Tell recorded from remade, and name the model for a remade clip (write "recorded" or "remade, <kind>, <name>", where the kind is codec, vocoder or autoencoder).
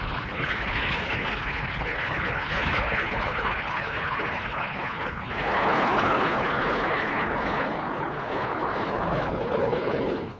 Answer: remade, codec, HILCodec